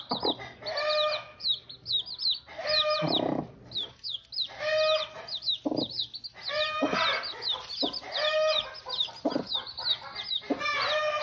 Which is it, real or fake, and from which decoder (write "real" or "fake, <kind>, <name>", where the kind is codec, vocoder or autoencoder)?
real